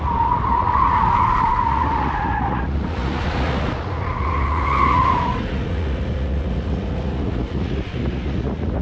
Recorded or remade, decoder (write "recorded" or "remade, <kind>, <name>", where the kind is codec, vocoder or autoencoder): remade, vocoder, Vocos